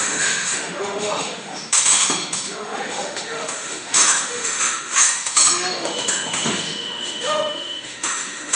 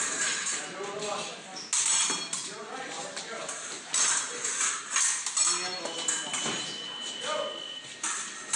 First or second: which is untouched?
second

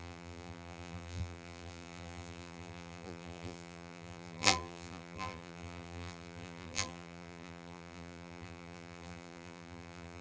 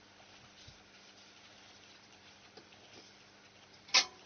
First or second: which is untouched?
second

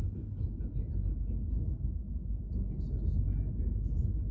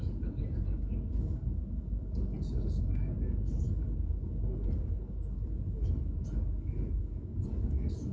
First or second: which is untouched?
first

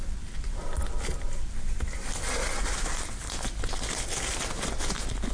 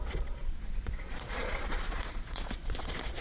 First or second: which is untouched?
first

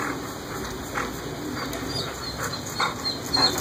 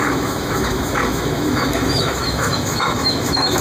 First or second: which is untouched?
first